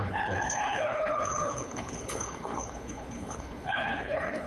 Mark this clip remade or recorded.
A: remade